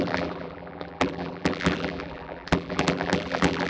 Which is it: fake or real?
fake